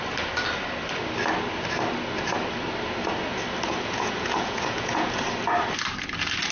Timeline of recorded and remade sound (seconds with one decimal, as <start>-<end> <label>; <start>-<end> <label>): 0.0-3.7 recorded; 3.7-5.2 remade; 5.2-6.5 recorded